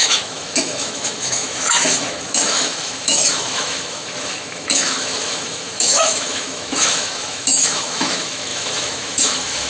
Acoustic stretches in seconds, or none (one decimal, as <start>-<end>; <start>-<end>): none